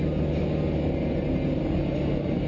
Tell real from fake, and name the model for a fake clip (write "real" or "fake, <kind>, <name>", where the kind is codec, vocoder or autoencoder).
real